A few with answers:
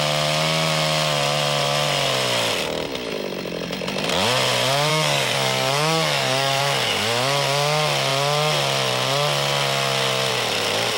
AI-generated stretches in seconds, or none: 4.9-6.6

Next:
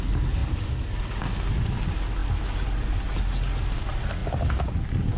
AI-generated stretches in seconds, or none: none

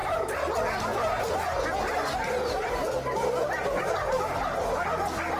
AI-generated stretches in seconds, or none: none